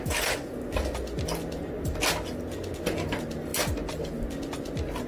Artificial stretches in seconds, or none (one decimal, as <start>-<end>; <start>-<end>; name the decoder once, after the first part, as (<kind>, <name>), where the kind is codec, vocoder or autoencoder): none